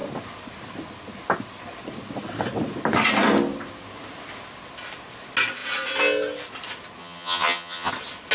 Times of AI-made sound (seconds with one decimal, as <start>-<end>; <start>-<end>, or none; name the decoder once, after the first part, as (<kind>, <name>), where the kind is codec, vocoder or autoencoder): 7.0-7.9 (vocoder, HiFi-GAN)